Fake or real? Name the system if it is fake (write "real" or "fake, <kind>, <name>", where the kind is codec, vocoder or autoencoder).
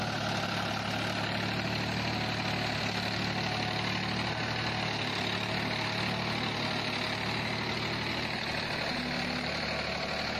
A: real